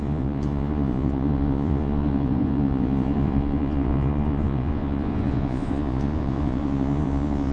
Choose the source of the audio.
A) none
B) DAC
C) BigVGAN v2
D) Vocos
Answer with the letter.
D